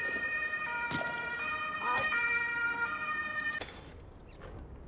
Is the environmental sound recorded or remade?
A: recorded